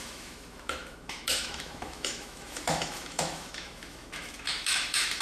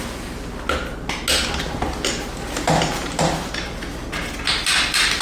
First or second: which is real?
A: second